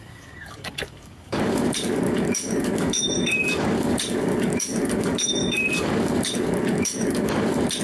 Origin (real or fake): fake